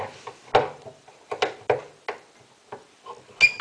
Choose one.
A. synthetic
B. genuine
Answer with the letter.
B